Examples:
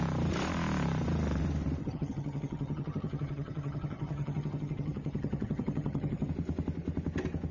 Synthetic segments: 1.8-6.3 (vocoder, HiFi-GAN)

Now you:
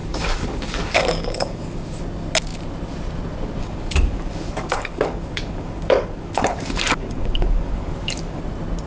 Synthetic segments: 0.0-2.0 (codec, DAC); 3.6-8.4

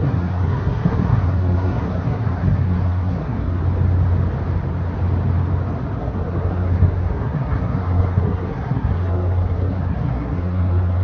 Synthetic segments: 0.0-3.6 (codec, SNAC); 6.0-11.0

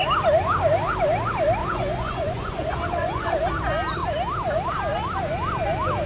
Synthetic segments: 1.6-3.5 (vocoder, Vocos)

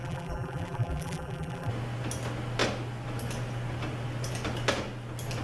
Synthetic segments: 0.0-1.7 (vocoder, BigVGAN v2)

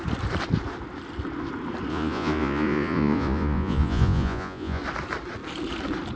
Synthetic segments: 1.9-4.8 (vocoder, Vocos)